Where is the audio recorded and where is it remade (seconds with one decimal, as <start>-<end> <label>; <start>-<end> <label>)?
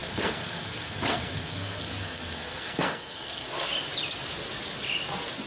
0.0-3.7 remade; 3.7-5.5 recorded